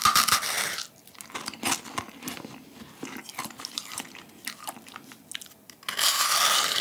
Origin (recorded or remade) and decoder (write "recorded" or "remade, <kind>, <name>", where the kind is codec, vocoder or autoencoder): recorded